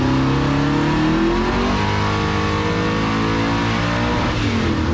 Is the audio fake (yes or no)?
no